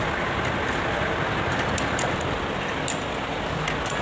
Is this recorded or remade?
recorded